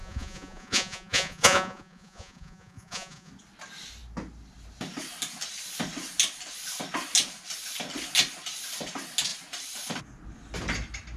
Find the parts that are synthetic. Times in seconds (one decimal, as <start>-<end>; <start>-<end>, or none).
0.0-3.3